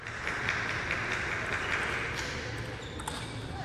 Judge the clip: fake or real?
real